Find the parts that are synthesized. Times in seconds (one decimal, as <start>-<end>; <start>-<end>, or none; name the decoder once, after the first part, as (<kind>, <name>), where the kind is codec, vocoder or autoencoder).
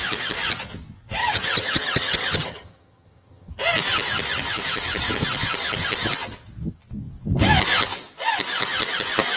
1.2-3.5 (vocoder, HiFi-GAN)